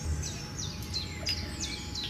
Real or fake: real